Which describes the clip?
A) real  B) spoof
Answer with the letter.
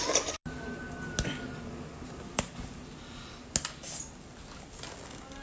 A